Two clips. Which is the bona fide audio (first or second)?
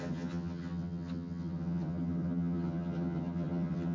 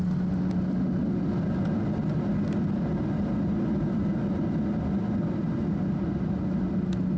second